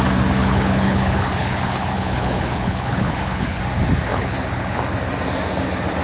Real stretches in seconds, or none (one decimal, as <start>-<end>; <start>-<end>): 0.0-0.4; 3.6-4.1; 4.8-6.0